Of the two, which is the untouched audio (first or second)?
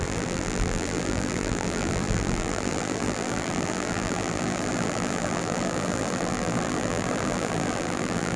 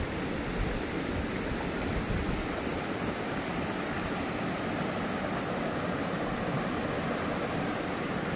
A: second